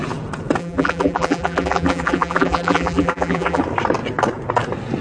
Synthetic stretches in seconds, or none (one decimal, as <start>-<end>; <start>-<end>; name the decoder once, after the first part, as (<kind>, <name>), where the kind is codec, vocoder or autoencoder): 0.6-3.6 (vocoder, BigVGAN v2)